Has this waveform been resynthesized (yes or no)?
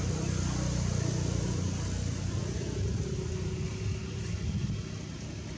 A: no